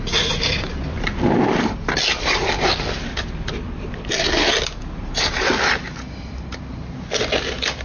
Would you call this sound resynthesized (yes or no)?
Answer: no